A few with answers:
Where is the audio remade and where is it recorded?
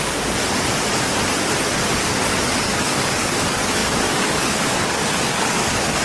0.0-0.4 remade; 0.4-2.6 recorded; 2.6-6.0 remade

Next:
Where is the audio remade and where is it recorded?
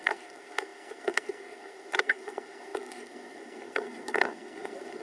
0.0-5.0 remade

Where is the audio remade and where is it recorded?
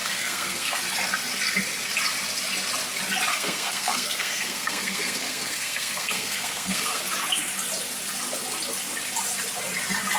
0.0-0.8 remade; 0.8-3.3 recorded; 3.3-7.0 remade; 7.0-10.2 recorded